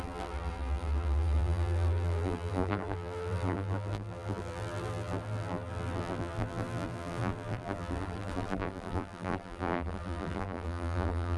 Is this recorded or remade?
remade